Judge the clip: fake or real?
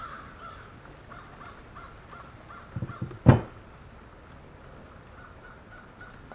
real